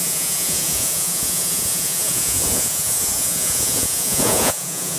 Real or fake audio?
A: fake